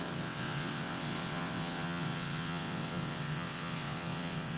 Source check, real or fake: fake